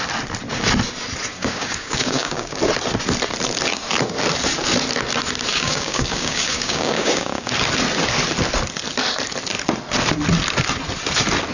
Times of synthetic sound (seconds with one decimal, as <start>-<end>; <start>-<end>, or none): 1.3-2.6; 5.5-7.5